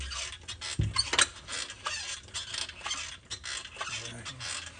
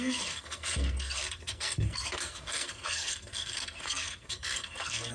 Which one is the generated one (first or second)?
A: second